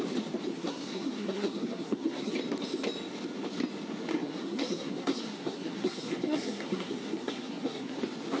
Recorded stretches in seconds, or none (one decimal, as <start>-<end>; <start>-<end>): 0.0-0.5; 2.3-4.1; 8.0-8.4